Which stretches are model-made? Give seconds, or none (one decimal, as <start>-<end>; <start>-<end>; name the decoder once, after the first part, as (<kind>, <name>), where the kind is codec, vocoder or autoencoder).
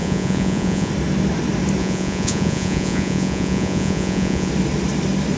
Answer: 0.0-0.9 (vocoder, Vocos); 1.8-4.5